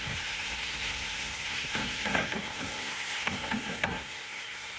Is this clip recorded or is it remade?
remade